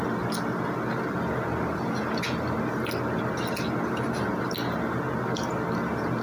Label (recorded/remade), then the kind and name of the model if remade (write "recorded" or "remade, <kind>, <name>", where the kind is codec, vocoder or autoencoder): recorded